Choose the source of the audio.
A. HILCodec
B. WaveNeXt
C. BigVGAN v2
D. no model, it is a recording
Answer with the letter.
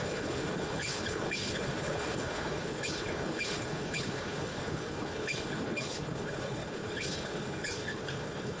A